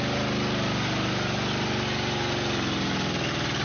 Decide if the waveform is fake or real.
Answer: real